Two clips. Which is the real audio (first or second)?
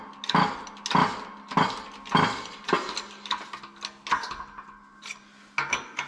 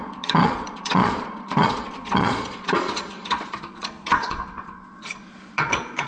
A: first